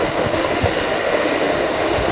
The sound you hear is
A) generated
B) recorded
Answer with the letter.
A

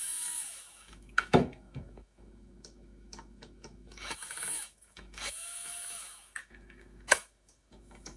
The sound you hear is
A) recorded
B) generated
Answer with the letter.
B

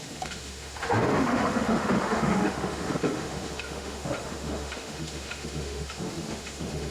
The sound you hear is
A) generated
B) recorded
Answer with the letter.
A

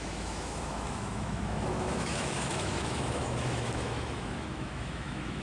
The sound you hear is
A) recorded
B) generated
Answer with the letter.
B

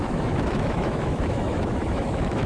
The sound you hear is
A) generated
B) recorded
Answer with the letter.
A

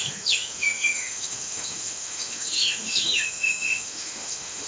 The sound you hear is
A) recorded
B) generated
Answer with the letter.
B